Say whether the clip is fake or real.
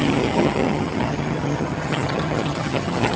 fake